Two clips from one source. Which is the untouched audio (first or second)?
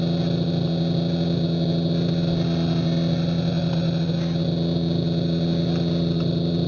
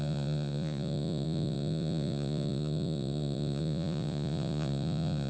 first